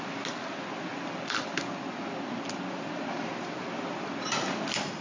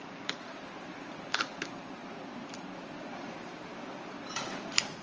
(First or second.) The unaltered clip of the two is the first